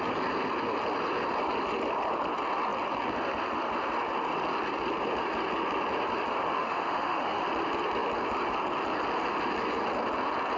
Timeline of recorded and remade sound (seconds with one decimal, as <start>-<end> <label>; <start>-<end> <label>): 0.0-6.4 recorded; 6.4-7.4 remade; 7.4-10.6 recorded